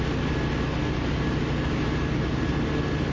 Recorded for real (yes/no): yes